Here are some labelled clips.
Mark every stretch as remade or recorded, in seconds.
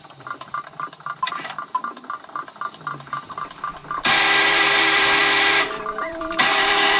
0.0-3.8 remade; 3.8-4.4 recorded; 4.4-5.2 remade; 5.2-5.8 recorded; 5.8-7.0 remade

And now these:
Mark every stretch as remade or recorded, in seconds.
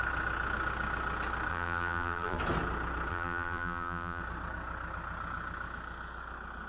0.0-1.5 recorded; 1.5-2.4 remade; 2.4-3.1 recorded; 3.1-4.2 remade; 4.2-6.7 recorded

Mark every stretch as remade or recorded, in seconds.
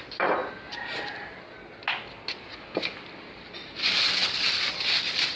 0.0-4.2 recorded; 4.2-5.0 remade; 5.0-5.4 recorded